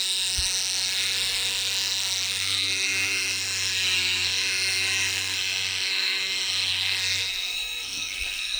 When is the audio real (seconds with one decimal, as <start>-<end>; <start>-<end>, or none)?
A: none